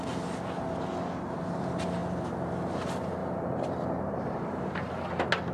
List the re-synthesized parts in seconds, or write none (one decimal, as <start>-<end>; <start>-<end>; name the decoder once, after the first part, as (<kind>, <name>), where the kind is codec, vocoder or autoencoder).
3.2-4.9 (vocoder, BigVGAN v2)